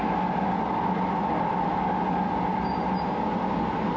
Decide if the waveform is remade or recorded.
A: recorded